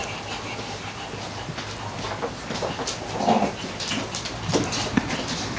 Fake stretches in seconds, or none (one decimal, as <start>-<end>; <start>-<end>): none